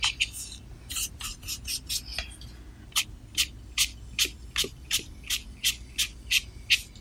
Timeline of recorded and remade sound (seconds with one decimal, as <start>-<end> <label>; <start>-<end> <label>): 0.0-7.0 recorded